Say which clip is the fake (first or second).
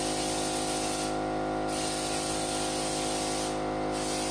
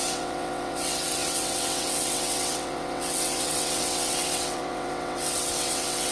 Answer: second